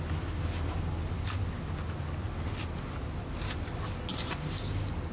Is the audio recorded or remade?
recorded